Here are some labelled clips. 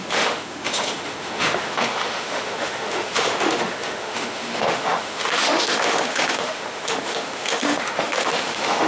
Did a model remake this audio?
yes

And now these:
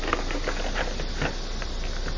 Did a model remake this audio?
no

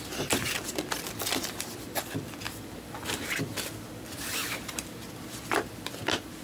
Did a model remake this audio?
yes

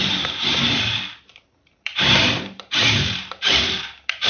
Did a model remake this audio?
yes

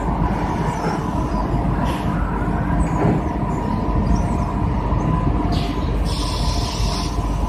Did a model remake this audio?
no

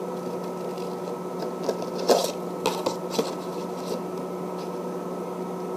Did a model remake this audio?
no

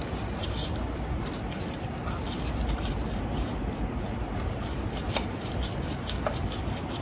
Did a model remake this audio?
no